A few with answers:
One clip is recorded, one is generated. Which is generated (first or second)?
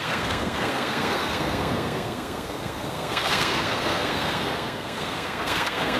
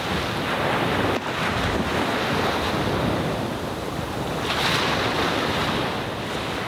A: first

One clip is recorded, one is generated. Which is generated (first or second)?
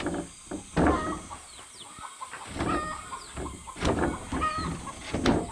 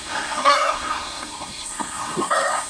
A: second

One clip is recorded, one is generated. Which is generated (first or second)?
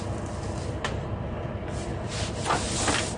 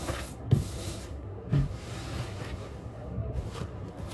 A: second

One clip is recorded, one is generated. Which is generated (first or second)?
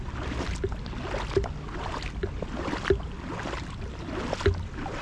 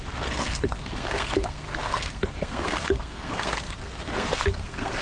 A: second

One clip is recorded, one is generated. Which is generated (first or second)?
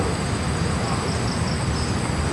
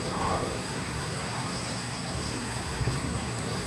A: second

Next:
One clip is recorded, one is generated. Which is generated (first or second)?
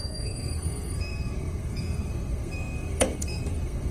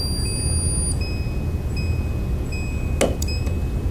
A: first